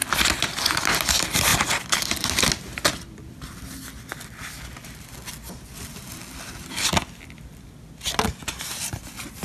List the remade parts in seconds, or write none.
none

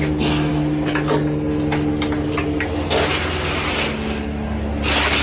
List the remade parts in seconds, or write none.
none